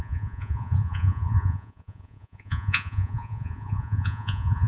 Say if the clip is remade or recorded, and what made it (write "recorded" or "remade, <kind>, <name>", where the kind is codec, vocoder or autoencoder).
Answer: remade, vocoder, Vocos